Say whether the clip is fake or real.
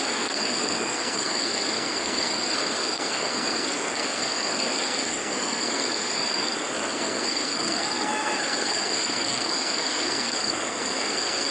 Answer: fake